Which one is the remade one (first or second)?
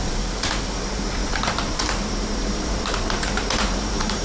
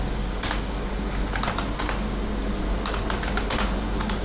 first